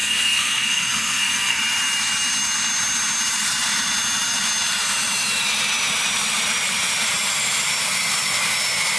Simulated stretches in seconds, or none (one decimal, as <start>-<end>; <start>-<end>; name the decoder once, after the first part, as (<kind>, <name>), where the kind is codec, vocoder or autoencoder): 0.0-1.6 (codec, SNAC)

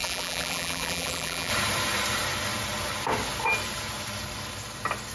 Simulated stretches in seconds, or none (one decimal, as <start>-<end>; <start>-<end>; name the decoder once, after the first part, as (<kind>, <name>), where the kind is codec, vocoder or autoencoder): 0.0-1.5 (vocoder, BigVGAN v2)

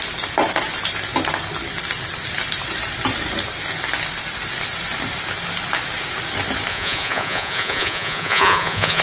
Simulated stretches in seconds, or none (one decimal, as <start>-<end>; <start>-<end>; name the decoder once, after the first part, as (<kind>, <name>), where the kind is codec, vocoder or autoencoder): 6.7-9.0 (vocoder, Vocos)